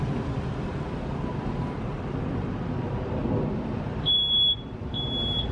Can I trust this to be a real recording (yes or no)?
no